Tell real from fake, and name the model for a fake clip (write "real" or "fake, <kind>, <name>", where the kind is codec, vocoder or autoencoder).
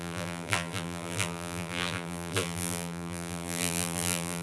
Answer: fake, vocoder, BigVGAN v2